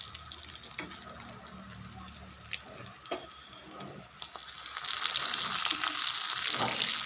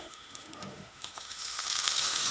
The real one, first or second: first